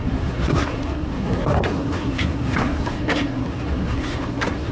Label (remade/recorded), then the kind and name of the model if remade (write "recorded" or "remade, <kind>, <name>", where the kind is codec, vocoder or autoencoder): remade, codec, SNAC